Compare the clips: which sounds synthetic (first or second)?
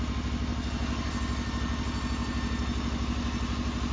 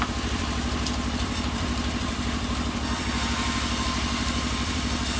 second